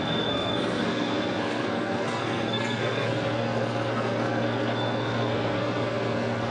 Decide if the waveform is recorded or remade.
remade